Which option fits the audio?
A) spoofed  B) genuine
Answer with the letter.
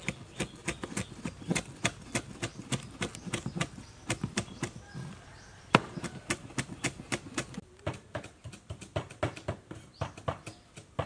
B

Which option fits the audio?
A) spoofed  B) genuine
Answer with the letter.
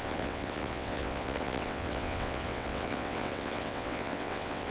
A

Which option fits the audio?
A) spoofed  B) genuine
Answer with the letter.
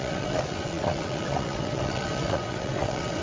A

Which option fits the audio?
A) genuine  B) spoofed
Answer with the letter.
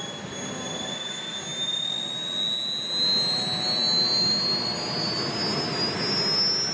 A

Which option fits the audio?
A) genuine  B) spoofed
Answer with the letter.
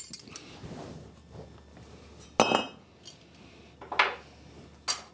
A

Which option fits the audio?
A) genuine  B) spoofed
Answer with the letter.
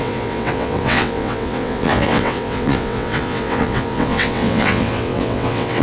B